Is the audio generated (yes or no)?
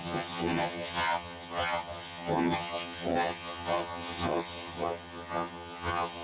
yes